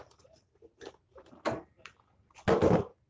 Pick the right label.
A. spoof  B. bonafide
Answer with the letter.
B